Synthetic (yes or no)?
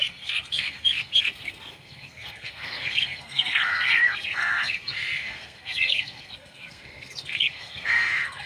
yes